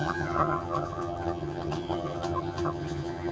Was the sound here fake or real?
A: fake